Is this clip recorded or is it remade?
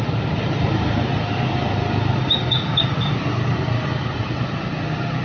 recorded